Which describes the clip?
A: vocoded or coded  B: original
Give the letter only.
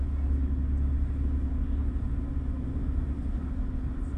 B